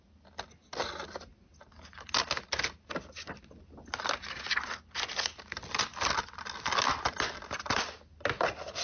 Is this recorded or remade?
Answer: recorded